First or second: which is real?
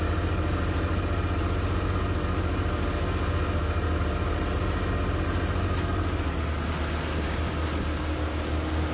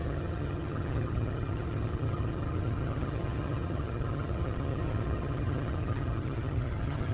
first